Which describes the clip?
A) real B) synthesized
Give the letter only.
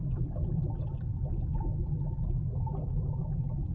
A